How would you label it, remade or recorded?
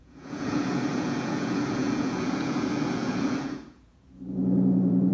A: remade